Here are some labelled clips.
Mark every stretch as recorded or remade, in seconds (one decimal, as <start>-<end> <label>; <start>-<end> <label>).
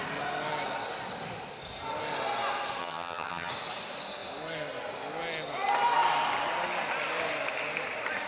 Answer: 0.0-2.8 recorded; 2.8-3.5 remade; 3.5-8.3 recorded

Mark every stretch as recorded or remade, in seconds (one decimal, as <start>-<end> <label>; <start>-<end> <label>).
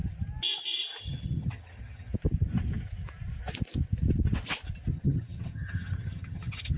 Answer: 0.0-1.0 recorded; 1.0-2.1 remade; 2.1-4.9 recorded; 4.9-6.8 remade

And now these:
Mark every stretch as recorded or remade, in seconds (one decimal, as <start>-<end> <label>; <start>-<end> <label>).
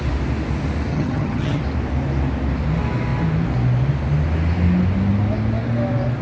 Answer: 0.0-0.9 recorded; 0.9-1.6 remade; 1.6-6.2 recorded